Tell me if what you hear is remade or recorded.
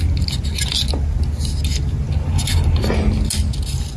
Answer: recorded